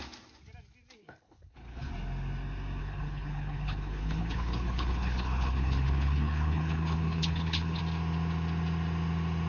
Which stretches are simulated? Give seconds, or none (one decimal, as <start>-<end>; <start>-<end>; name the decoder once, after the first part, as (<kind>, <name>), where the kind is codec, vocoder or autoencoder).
1.0-1.9 (codec, HILCodec); 2.8-7.8